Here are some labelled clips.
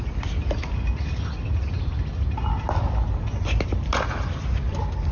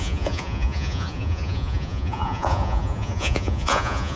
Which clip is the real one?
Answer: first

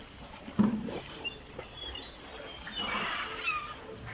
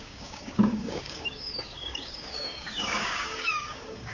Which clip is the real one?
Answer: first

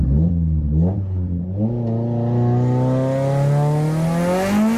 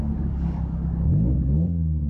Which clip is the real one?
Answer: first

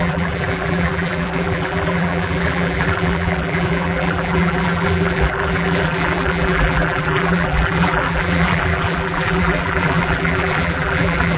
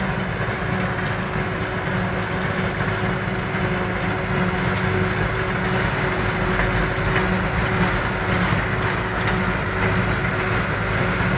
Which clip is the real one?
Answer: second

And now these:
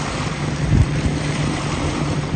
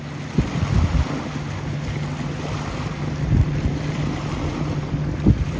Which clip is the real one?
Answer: second